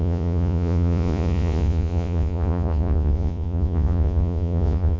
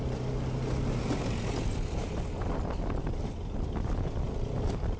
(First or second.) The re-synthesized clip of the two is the first